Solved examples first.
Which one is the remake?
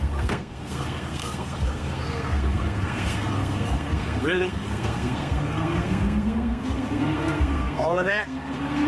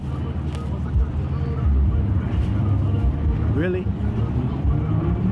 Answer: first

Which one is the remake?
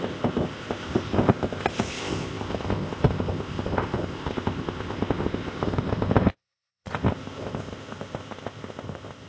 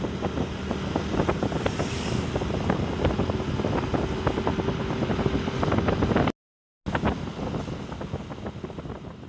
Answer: first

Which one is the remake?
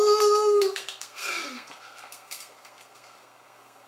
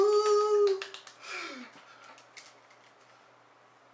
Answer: first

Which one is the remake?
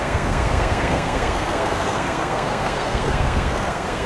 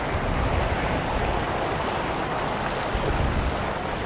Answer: first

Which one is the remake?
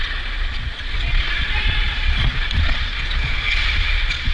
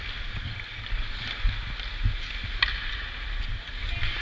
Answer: first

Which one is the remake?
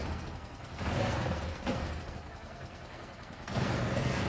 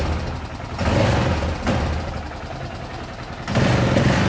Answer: first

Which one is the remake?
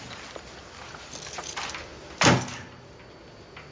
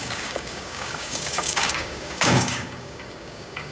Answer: second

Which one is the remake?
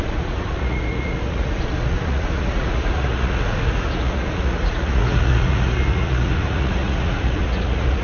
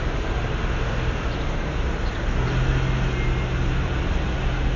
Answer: first